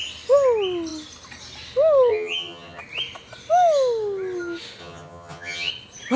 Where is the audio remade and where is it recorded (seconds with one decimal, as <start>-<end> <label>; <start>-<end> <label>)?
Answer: 0.0-2.1 recorded; 2.1-2.8 remade; 2.8-4.8 recorded; 4.8-5.7 remade; 5.7-6.2 recorded